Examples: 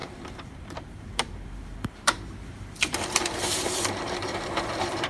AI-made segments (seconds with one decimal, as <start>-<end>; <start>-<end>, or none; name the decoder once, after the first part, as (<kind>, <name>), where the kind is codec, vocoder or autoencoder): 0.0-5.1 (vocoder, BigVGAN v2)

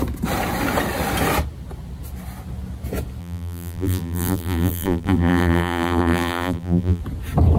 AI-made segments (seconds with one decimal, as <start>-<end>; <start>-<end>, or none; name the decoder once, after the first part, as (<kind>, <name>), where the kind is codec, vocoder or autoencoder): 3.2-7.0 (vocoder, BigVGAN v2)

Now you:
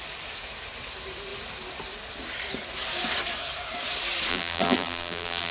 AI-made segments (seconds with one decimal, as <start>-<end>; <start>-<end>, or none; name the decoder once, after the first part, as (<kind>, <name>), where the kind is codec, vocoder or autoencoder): 4.3-5.5 (vocoder, BigVGAN v2)

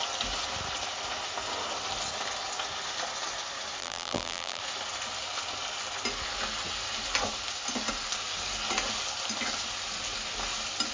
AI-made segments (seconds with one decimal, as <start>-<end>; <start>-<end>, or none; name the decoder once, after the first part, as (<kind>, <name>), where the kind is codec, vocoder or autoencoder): 3.8-4.6 (vocoder, BigVGAN v2)

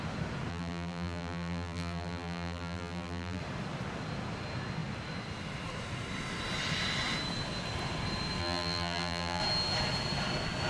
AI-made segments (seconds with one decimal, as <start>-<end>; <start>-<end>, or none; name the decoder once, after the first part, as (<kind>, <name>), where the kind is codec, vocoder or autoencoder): 0.5-3.4 (vocoder, BigVGAN v2); 8.4-9.4

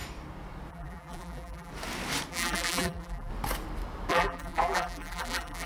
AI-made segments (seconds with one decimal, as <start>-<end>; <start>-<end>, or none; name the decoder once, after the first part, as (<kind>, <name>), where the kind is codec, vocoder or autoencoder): 0.7-1.7 (vocoder, BigVGAN v2); 2.3-3.3; 4.1-5.7